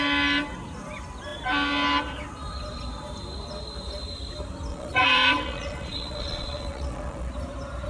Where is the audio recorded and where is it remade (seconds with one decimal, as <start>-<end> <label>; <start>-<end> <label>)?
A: 0.0-4.7 recorded; 4.7-7.3 remade; 7.3-7.9 recorded